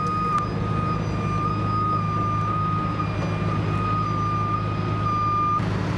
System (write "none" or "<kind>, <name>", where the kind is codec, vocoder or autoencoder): none